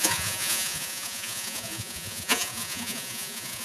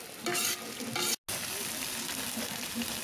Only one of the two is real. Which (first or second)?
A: second